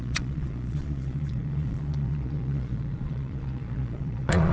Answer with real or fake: fake